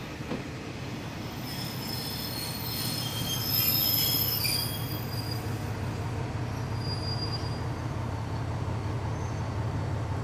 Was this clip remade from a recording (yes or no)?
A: no